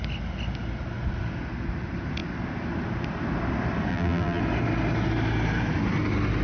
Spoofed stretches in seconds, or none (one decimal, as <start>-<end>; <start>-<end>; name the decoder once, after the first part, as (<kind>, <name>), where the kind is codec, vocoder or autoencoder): 3.9-4.4 (vocoder, BigVGAN v2)